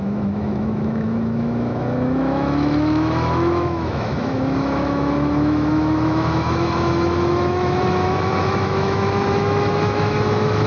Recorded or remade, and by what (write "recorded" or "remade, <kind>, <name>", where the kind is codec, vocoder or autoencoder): remade, autoencoder, DAC-VAE